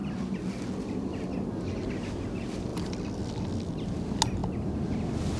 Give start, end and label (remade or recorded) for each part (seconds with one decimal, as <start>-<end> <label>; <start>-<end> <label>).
0.0-5.4 recorded